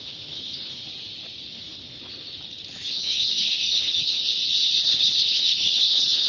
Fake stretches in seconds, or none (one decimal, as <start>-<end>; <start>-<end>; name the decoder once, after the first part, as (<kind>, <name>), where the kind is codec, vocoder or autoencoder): 0.0-0.9 (codec, HILCodec); 1.5-2.0; 2.9-4.2; 4.8-6.3